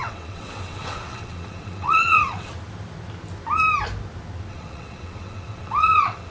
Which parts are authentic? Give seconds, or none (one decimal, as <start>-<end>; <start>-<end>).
2.5-4.5